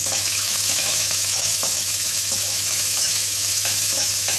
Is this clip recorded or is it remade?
remade